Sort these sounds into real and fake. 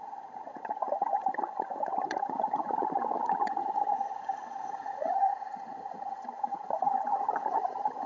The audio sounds fake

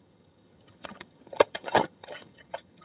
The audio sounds fake